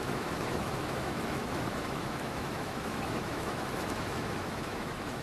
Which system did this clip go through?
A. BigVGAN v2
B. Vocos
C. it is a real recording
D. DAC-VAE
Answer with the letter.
D